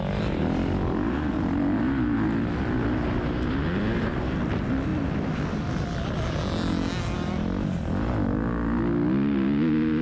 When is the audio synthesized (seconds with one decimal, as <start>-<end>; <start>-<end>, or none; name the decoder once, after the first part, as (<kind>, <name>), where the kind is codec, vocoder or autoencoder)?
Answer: none